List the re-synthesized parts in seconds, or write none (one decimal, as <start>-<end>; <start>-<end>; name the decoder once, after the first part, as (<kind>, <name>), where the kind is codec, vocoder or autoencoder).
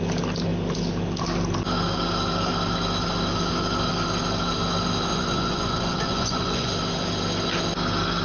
5.1-6.7 (vocoder, Vocos)